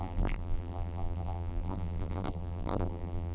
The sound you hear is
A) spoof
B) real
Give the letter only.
A